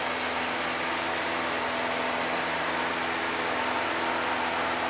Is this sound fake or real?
real